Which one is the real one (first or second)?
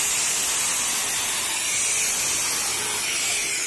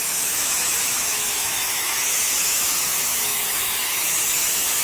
first